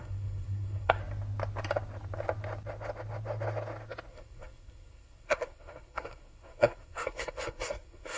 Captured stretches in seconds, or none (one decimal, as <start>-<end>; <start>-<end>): 1.0-4.1